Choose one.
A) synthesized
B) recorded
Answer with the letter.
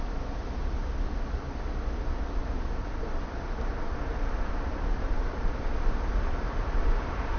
B